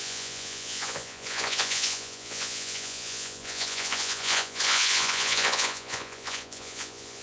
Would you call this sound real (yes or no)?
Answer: no